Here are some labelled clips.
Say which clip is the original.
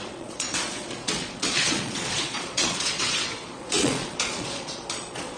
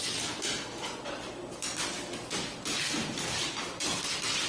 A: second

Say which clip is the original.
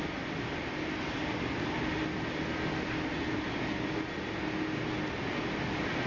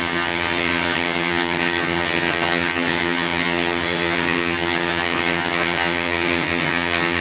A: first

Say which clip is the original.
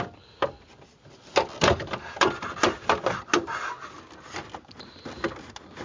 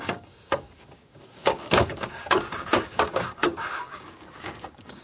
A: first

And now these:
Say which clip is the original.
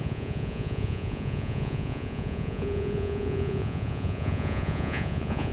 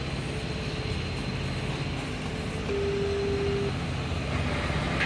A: second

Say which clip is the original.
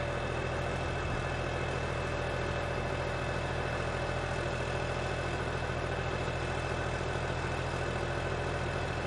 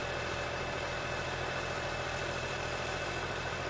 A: first